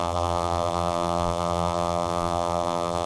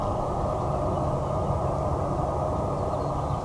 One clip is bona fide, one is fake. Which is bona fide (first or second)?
second